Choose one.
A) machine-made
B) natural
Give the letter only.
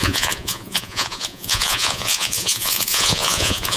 A